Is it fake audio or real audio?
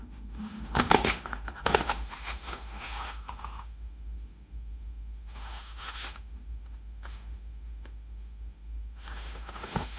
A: fake